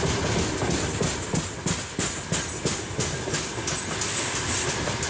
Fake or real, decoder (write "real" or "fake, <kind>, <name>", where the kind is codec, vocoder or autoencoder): real